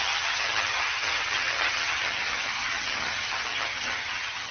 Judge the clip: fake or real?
fake